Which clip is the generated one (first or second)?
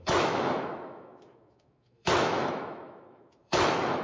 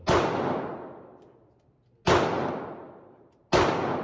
first